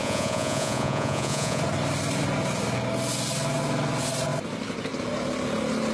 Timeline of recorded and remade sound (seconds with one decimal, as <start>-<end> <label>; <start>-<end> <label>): 0.0-1.6 remade; 1.6-5.9 recorded